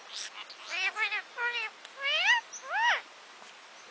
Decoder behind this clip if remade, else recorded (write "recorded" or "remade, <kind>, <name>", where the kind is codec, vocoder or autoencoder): recorded